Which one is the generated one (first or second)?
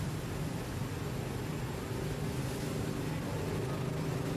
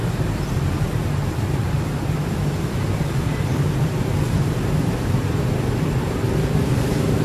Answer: second